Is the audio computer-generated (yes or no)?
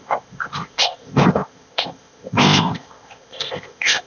yes